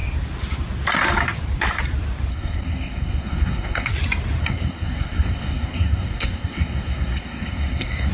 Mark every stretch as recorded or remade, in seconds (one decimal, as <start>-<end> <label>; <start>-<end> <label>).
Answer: 0.0-2.3 recorded; 2.3-3.9 remade; 3.9-4.4 recorded; 4.4-8.1 remade